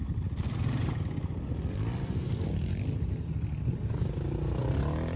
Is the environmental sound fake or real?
real